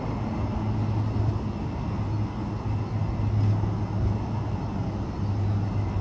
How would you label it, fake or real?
real